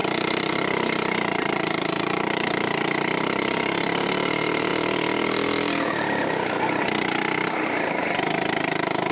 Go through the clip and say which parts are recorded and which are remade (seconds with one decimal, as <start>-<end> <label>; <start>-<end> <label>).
0.0-4.7 remade; 4.7-7.9 recorded; 7.9-9.1 remade

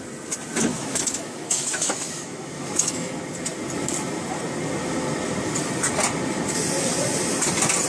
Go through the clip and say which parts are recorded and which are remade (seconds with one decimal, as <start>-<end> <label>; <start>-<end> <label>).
0.0-0.7 recorded; 0.7-3.1 remade; 3.1-7.9 recorded

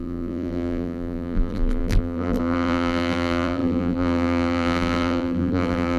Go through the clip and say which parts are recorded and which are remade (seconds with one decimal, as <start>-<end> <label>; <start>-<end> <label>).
0.0-6.0 remade

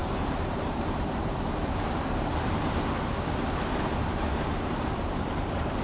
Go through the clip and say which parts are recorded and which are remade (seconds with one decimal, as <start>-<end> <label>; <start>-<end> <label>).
0.0-2.6 remade; 2.6-4.1 recorded; 4.1-5.8 remade

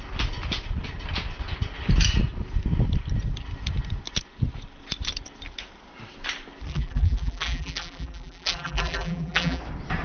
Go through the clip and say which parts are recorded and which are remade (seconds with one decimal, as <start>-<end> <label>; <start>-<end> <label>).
0.0-6.7 recorded; 6.7-9.6 remade; 9.6-10.0 recorded

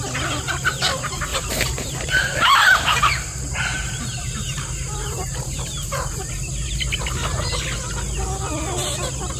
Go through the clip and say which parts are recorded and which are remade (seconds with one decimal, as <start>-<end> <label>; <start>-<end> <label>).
0.0-1.3 recorded; 1.3-6.3 remade; 6.3-9.4 recorded